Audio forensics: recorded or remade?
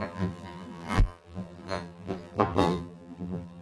remade